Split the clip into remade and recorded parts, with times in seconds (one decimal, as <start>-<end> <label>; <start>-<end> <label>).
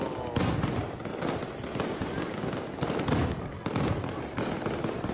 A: 0.0-5.1 recorded